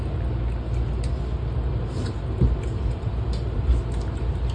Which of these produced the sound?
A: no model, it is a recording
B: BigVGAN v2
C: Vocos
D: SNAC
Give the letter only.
A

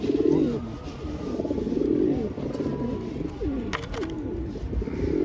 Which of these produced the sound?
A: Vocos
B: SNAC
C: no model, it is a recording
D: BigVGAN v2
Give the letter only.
C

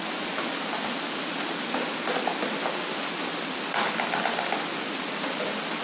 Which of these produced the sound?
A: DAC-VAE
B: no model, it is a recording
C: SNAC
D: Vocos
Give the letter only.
B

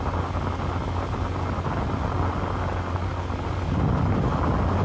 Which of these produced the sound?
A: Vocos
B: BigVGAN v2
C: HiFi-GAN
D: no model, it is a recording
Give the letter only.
D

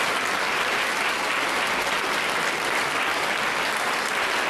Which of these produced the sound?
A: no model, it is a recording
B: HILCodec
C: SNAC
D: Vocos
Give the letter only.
A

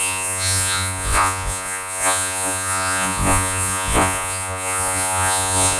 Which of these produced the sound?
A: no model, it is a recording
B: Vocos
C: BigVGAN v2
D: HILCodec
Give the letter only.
B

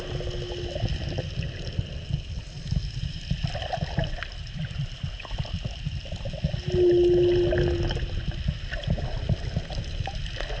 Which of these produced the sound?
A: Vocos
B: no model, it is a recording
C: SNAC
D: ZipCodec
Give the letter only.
B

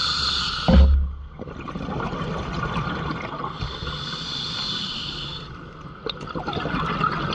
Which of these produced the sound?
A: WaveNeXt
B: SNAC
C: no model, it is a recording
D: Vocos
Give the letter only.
C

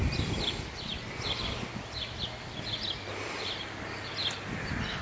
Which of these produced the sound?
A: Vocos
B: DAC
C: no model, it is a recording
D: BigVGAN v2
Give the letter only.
C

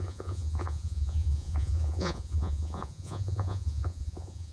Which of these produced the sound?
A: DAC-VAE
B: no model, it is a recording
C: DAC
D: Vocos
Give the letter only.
D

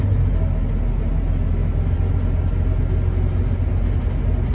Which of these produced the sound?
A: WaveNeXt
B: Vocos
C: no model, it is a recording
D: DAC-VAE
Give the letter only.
C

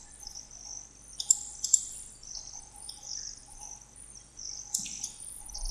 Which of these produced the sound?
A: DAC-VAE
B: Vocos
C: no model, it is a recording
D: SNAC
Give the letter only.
B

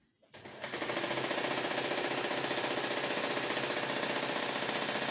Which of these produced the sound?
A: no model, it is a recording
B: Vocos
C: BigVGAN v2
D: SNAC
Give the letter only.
A